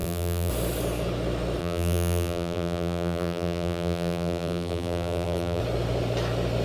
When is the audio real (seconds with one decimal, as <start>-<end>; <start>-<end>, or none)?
0.5-1.6; 5.6-6.6